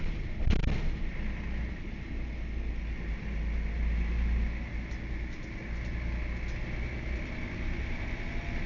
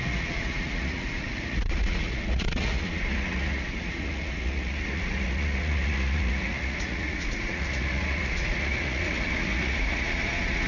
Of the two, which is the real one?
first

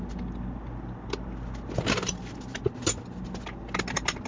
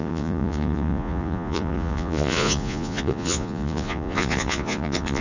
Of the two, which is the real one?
first